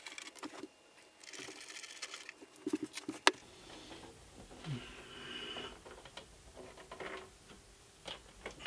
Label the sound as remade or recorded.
recorded